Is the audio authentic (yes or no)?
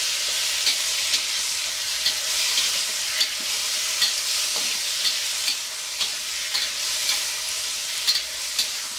yes